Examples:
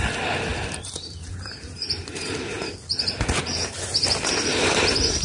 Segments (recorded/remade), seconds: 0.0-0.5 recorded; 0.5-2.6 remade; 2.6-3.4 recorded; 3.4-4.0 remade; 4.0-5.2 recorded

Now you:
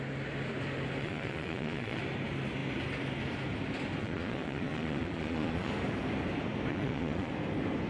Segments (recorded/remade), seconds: 0.0-1.0 recorded; 1.0-2.0 remade; 2.0-4.0 recorded; 4.0-5.7 remade; 5.7-6.7 recorded; 6.7-7.3 remade; 7.3-7.9 recorded

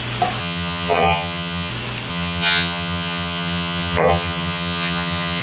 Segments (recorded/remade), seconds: 0.0-0.4 recorded; 0.4-1.7 remade; 1.7-2.1 recorded; 2.1-5.4 remade